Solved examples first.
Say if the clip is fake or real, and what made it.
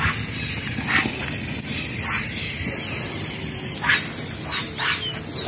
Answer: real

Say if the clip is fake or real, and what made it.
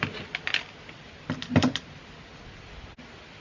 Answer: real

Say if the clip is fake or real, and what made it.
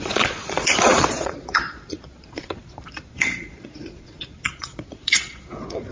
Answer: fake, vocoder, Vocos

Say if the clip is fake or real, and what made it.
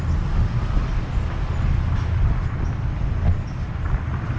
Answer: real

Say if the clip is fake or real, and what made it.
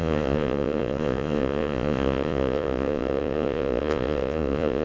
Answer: fake, vocoder, Vocos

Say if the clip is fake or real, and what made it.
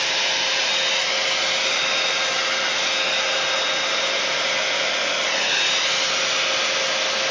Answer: real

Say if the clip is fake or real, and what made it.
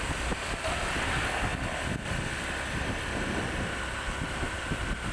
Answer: real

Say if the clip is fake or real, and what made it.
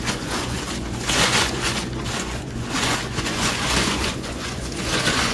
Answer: fake, vocoder, Vocos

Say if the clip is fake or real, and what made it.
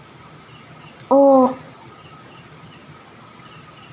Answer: real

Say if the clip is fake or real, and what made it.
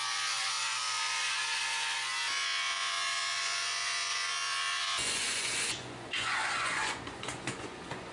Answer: fake, vocoder, Vocos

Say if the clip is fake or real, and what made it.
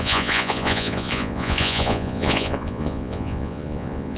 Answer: fake, vocoder, Vocos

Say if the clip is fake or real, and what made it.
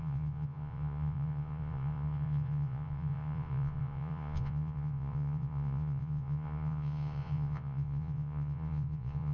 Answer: fake, vocoder, Vocos